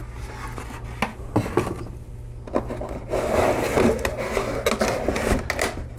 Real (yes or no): yes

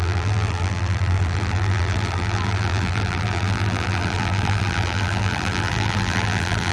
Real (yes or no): no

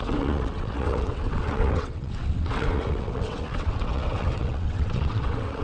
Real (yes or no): no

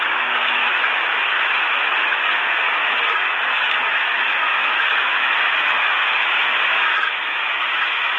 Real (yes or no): no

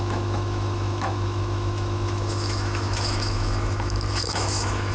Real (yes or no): no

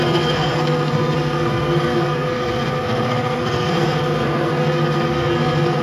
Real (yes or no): no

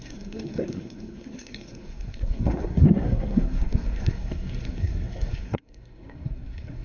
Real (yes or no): no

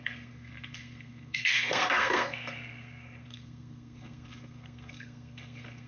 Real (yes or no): no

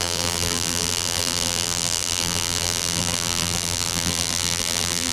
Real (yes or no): no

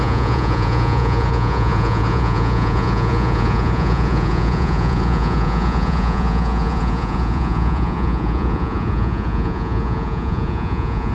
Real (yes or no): no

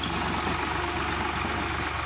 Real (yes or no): yes